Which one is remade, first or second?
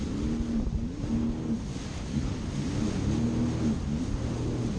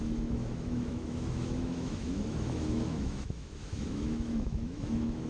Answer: second